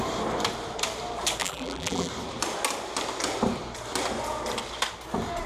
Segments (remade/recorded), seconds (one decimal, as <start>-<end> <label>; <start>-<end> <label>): 0.0-1.4 recorded; 1.4-2.1 remade; 2.1-5.5 recorded